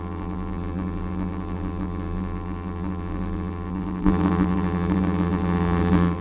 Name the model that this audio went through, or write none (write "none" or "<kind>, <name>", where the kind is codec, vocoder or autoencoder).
vocoder, BigVGAN v2